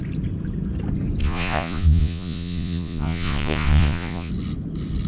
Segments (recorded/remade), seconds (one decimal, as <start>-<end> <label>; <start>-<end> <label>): 0.0-1.2 recorded; 1.2-4.3 remade; 4.3-5.1 recorded